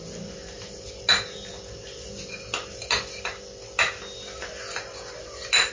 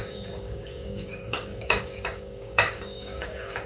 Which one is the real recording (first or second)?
first